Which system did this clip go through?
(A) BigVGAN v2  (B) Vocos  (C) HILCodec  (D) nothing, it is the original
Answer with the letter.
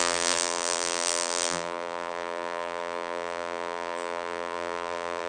A